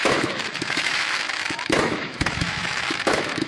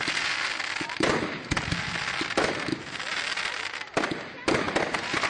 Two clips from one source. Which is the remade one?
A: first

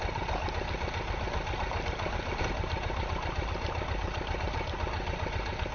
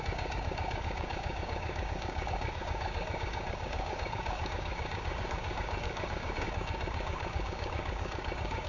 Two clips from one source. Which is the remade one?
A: second